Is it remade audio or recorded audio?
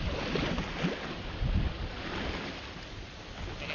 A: recorded